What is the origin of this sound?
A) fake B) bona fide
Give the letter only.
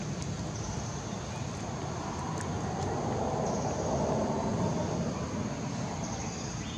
B